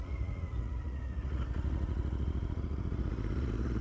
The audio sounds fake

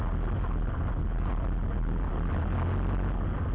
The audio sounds real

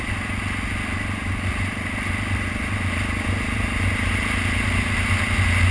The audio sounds real